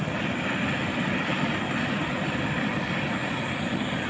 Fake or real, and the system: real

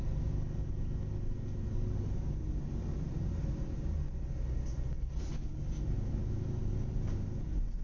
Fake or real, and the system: real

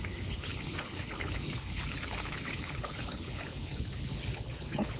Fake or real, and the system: fake, codec, HILCodec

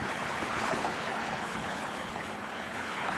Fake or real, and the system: fake, codec, HILCodec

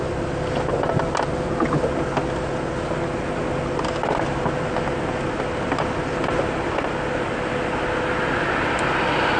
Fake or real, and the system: real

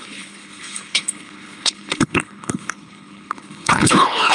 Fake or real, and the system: fake, codec, HILCodec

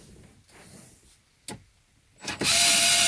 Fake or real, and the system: real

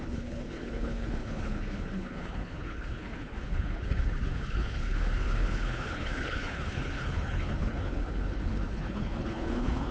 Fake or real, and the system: fake, codec, HILCodec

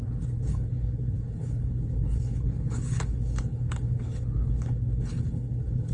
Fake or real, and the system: fake, codec, HILCodec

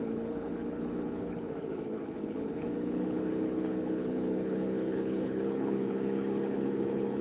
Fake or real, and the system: fake, codec, HILCodec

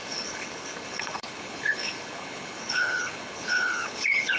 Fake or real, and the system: fake, codec, HILCodec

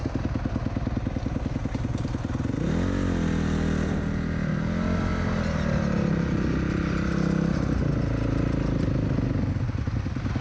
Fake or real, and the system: real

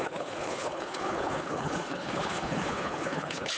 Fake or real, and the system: fake, codec, HILCodec